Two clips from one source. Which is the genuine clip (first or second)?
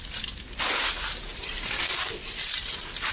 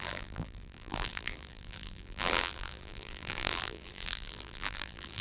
first